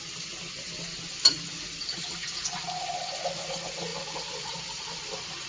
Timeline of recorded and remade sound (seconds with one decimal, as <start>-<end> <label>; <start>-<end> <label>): 0.0-5.5 recorded